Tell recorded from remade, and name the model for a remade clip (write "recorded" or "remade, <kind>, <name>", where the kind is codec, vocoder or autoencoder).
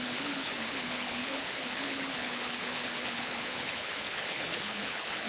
remade, codec, HILCodec